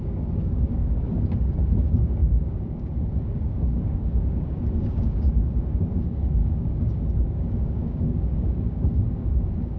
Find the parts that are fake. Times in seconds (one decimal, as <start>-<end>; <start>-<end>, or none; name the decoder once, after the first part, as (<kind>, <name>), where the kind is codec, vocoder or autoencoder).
0.0-9.8 (codec, DAC)